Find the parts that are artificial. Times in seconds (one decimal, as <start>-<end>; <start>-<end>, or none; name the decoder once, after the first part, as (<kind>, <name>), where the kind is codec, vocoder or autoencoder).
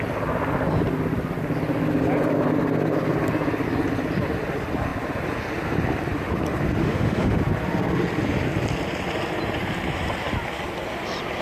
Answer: 6.8-7.4 (autoencoder, DAC-VAE)